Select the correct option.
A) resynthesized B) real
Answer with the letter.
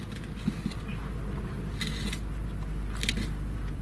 B